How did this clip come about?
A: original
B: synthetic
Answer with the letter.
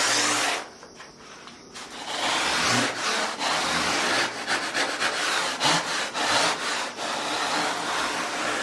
A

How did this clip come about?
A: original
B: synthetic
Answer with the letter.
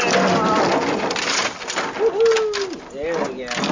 A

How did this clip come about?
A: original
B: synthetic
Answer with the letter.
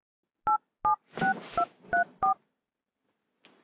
A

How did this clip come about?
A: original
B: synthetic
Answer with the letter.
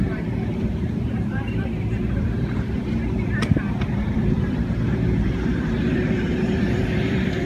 B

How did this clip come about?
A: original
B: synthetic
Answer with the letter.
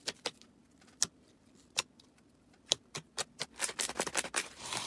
B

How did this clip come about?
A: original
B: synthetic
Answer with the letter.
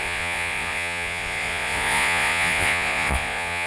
B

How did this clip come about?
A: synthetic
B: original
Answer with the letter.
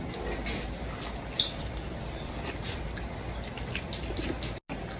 B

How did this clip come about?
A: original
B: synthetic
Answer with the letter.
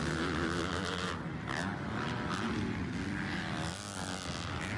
A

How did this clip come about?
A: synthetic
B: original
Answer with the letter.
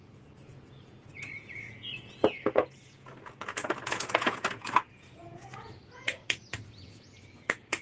A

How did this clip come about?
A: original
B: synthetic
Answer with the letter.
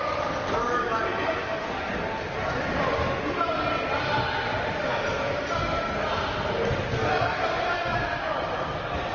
A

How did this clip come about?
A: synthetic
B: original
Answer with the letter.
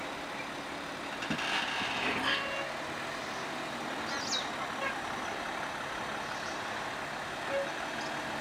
B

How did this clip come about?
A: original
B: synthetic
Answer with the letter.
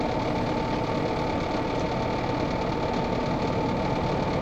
A